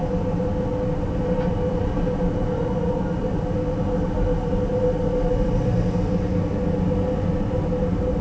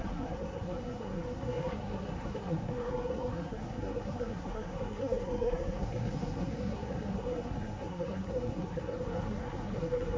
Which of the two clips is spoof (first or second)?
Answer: second